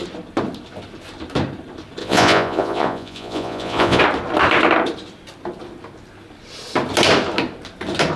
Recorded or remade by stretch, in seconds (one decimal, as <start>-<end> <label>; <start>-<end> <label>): 0.0-2.0 recorded; 2.0-4.0 remade; 4.0-8.2 recorded